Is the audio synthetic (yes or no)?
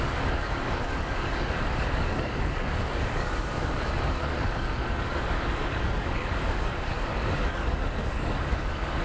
yes